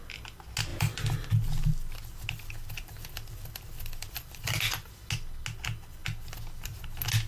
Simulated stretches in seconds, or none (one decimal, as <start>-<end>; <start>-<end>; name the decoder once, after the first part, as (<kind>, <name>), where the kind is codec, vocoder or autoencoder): 0.7-5.1 (vocoder, BigVGAN v2); 6.0-6.8